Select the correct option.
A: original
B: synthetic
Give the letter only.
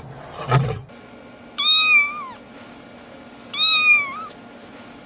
A